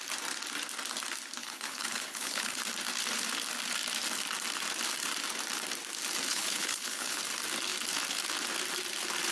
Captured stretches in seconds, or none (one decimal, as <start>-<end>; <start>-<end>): 0.0-1.4; 2.6-6.3; 7.2-9.3